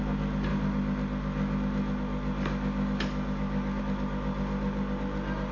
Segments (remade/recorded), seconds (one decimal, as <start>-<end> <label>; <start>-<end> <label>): 0.0-5.5 recorded